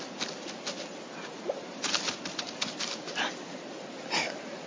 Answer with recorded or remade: recorded